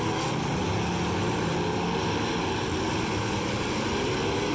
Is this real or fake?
real